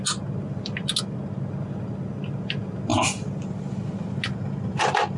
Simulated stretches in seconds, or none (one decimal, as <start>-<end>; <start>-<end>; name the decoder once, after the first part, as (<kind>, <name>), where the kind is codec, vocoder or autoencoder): none

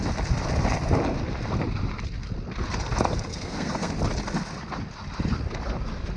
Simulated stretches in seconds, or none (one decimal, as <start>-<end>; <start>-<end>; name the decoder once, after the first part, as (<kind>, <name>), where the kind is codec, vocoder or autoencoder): 3.3-3.9 (codec, SNAC)

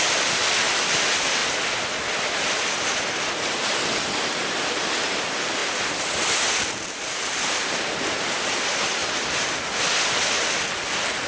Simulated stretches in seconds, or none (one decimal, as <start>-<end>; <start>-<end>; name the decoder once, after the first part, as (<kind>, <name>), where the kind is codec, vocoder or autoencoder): none

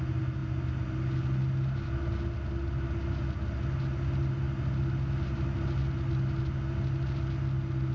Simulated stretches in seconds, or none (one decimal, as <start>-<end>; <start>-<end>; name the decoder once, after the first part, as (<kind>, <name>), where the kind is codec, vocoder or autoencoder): none

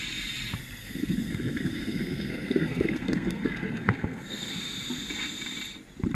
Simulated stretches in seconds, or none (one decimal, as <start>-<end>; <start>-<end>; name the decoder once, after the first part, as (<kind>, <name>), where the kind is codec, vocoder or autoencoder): 0.8-4.5 (codec, SNAC)